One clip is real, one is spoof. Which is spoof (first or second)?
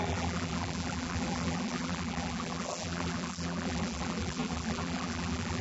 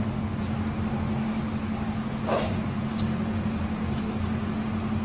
first